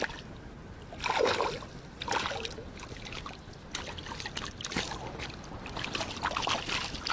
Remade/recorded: recorded